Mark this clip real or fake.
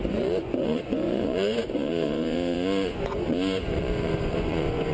fake